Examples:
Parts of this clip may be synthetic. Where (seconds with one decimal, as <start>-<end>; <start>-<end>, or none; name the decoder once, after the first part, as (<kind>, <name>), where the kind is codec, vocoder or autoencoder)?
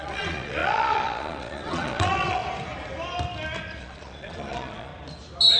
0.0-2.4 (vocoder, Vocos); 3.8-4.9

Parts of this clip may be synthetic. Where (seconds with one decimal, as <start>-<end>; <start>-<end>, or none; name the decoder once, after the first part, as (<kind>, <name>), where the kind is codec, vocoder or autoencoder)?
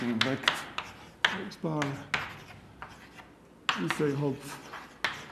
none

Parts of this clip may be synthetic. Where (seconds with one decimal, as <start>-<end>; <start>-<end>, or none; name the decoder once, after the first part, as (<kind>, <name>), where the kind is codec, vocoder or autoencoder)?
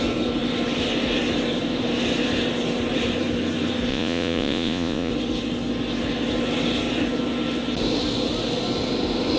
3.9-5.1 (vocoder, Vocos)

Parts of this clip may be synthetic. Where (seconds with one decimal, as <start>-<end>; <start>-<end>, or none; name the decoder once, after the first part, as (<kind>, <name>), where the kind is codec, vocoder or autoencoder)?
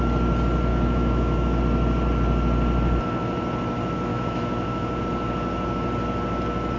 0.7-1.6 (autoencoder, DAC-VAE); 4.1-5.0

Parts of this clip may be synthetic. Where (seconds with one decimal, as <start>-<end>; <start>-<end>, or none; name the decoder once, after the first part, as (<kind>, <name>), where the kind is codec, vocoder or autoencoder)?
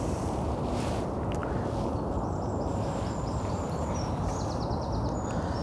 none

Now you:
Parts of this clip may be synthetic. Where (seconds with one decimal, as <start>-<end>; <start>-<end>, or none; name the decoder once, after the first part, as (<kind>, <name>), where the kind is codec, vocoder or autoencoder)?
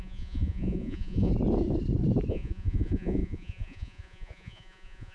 0.0-1.3 (vocoder, Vocos); 2.3-5.1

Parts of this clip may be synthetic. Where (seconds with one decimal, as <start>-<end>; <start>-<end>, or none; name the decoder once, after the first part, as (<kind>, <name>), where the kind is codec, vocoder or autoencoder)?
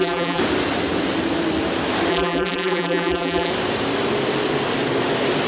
0.0-0.4 (vocoder, BigVGAN v2); 2.1-3.5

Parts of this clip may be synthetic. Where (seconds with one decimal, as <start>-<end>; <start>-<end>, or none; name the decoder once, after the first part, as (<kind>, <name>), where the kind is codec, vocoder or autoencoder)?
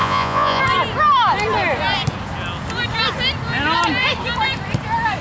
0.0-0.6 (vocoder, Vocos)